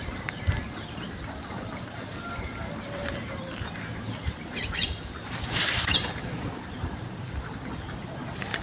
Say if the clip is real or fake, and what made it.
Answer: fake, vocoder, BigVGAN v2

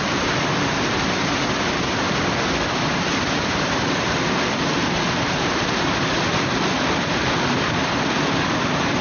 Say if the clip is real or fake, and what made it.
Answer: real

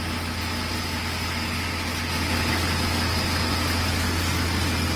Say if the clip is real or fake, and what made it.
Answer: real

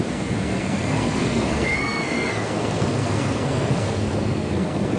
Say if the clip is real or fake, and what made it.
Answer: fake, codec, SNAC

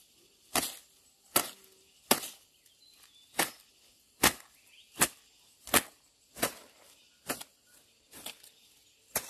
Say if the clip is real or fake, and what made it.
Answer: real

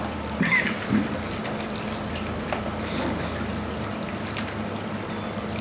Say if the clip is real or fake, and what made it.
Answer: real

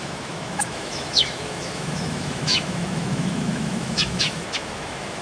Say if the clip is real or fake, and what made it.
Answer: fake, autoencoder, DAC-VAE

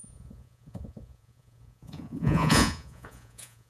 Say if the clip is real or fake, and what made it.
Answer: fake, vocoder, Vocos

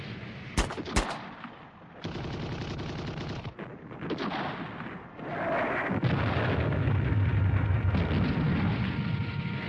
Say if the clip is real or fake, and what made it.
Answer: real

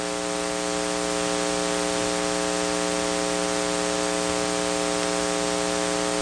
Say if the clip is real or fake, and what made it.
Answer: real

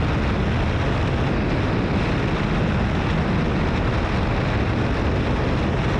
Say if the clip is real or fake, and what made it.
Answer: real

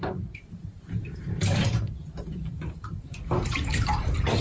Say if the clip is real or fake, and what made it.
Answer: fake, vocoder, BigVGAN v2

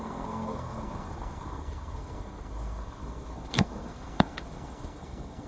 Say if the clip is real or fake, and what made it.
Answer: fake, codec, SNAC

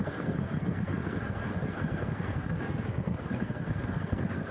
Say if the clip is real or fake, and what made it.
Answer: fake, codec, SNAC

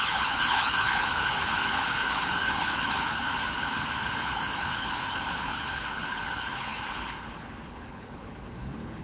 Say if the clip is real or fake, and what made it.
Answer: fake, codec, HILCodec